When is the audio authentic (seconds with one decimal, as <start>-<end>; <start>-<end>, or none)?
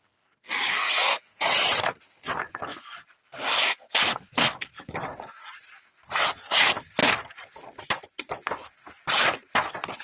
0.0-0.7; 1.4-10.0